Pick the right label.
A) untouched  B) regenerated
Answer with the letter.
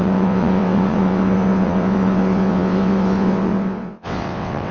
B